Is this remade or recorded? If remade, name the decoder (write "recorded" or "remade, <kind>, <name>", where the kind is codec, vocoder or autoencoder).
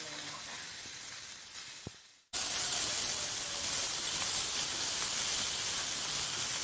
recorded